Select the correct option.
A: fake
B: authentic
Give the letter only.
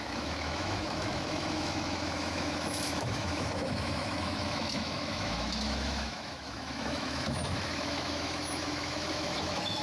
A